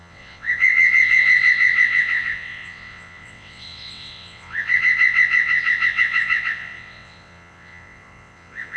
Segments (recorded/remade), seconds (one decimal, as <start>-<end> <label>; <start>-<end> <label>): 0.0-8.8 remade